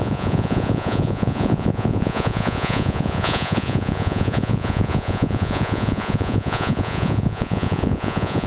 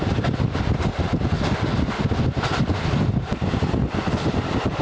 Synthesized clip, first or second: first